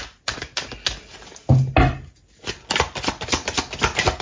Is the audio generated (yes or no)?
no